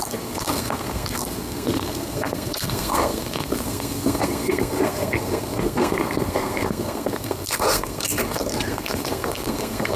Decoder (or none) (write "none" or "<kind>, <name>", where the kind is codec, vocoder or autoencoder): codec, SNAC